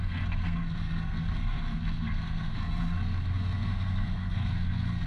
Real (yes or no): no